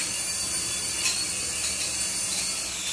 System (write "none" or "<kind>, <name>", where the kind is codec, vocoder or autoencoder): none